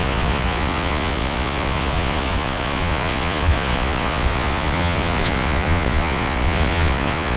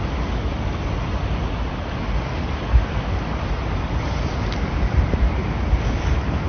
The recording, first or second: second